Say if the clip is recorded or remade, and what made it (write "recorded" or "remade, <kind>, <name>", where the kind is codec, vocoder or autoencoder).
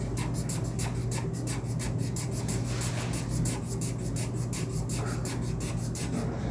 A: recorded